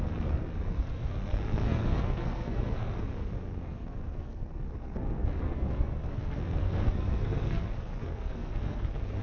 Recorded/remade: remade